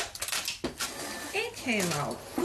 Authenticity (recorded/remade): recorded